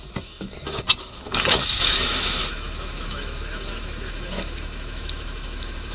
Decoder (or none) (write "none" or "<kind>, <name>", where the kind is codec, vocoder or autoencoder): autoencoder, DAC-VAE